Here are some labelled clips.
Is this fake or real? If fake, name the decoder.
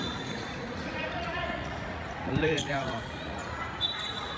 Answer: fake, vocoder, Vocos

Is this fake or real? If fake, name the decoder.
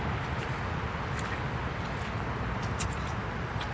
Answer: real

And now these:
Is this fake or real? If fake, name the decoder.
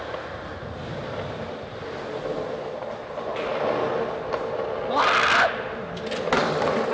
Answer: real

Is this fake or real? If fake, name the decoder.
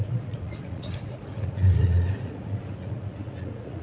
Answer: fake, vocoder, Vocos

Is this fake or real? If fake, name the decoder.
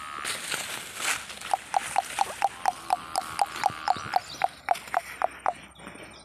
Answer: real